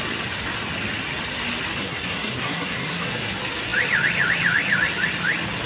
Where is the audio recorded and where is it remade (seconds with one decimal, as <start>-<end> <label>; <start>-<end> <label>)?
0.0-1.8 recorded; 1.8-3.3 remade; 3.3-5.7 recorded